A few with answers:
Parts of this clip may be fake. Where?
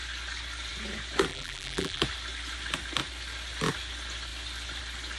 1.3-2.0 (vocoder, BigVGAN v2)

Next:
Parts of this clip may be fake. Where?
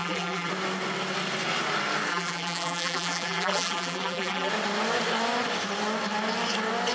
0.0-0.5 (vocoder, BigVGAN v2); 2.1-4.5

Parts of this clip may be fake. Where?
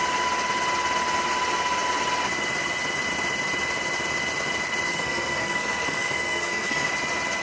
4.9-6.9 (codec, SNAC)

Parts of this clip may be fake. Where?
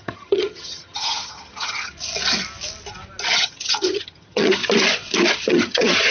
0.0-1.9 (vocoder, HiFi-GAN); 3.3-4.6; 5.5-6.1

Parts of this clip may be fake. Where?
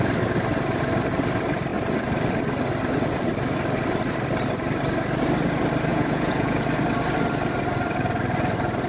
5.9-6.6 (vocoder, Vocos)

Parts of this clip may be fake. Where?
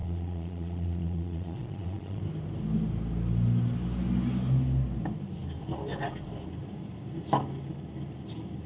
0.0-2.2 (vocoder, Vocos)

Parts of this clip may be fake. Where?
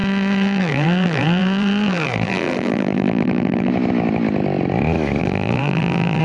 0.0-3.7 (vocoder, BigVGAN v2); 5.2-6.2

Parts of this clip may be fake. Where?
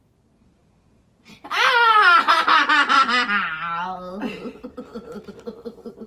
none